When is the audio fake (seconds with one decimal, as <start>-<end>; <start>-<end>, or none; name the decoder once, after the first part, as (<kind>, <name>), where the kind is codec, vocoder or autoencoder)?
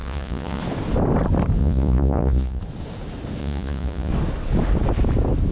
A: 0.0-0.6 (vocoder, Vocos); 1.6-2.6; 3.4-4.1